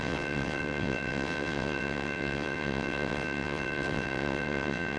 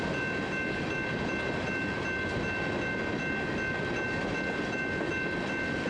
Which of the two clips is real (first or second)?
second